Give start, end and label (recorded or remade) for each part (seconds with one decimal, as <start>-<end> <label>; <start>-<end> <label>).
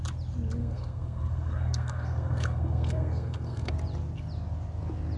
0.0-0.6 recorded; 0.6-3.7 remade; 3.7-5.2 recorded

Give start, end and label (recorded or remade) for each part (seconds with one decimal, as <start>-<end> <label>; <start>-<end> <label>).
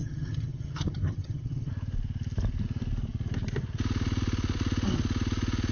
0.0-1.7 remade; 1.7-5.7 recorded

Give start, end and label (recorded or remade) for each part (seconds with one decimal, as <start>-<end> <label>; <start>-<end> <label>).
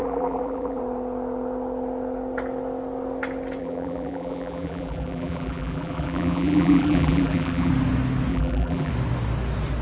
0.0-0.8 remade; 0.8-3.6 recorded; 3.6-7.7 remade; 7.7-8.3 recorded; 8.3-8.9 remade; 8.9-9.8 recorded